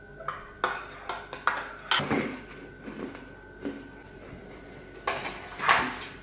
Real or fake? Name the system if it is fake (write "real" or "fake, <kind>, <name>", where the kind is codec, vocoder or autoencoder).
real